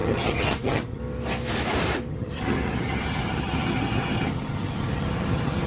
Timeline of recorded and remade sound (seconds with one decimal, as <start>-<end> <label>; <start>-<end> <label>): 0.0-1.0 remade; 1.0-2.1 recorded; 2.1-5.7 remade